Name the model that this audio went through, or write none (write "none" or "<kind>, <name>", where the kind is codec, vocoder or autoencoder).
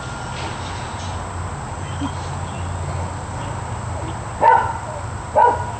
none